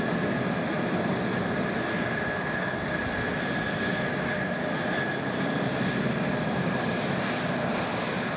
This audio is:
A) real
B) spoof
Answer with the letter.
A